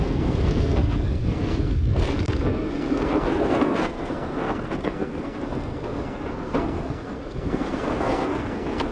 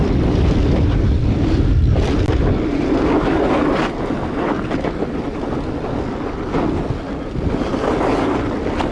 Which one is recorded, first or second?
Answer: second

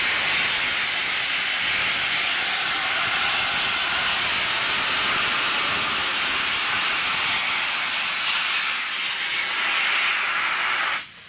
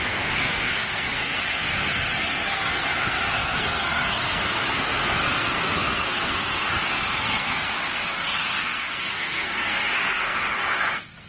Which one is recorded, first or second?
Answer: first